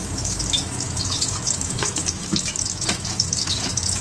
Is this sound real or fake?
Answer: fake